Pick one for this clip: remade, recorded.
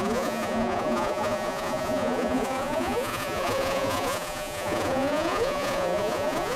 remade